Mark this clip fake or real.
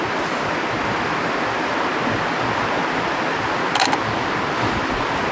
real